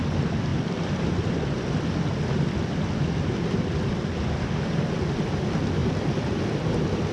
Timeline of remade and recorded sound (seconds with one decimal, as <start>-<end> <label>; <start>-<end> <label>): 0.0-0.5 recorded; 0.5-2.9 remade; 2.9-5.8 recorded; 5.8-7.1 remade